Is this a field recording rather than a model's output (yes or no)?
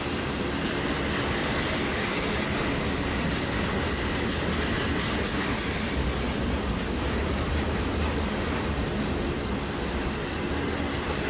yes